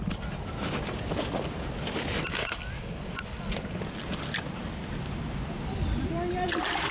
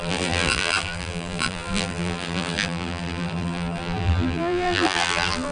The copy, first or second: second